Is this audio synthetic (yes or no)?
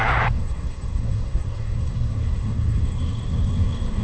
yes